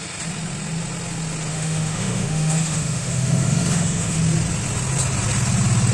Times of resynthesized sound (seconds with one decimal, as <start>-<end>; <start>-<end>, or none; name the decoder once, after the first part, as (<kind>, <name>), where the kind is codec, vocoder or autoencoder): 1.5-4.2 (autoencoder, DAC-VAE)